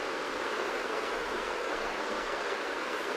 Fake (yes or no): yes